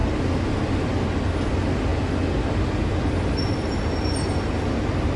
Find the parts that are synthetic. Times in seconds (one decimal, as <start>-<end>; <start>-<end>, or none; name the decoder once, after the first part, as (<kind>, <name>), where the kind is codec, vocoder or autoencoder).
none

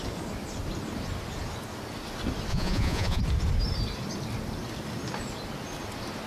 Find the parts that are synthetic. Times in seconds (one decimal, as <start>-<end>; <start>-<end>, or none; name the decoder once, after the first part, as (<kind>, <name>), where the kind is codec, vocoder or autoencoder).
2.5-3.2 (vocoder, Vocos)

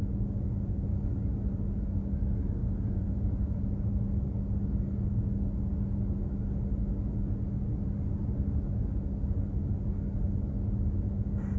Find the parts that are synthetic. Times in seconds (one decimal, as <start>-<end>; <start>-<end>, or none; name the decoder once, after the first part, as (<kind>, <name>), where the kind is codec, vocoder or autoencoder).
2.6-3.6 (vocoder, Vocos)

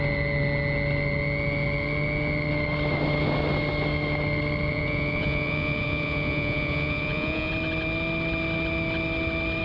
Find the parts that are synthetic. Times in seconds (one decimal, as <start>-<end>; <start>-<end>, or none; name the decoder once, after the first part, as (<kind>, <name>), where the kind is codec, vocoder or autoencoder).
4.7-7.5 (vocoder, Vocos)

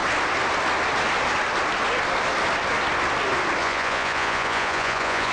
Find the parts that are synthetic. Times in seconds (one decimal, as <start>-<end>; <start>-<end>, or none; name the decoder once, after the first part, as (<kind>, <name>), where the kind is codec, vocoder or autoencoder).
3.6-5.3 (vocoder, Vocos)